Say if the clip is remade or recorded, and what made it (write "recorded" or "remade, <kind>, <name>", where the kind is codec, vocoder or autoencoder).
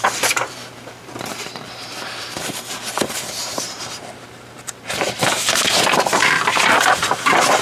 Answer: remade, vocoder, BigVGAN v2